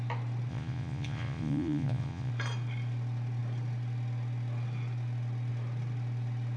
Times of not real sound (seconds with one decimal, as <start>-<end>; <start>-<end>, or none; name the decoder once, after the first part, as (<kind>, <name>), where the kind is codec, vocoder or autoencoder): 0.5-2.3 (vocoder, Vocos)